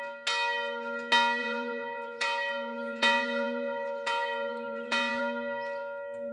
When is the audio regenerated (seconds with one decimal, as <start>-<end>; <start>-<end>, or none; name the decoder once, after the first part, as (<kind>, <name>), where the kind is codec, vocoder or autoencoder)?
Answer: 1.4-5.2 (vocoder, Vocos)